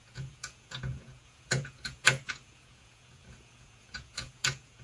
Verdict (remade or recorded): remade